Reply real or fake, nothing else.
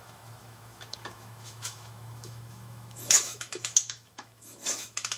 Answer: fake